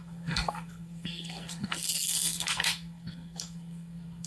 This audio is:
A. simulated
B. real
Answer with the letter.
A